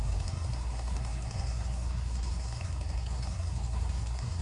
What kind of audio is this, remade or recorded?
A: remade